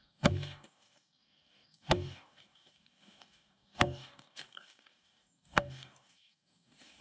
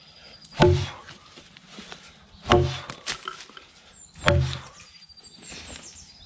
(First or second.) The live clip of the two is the second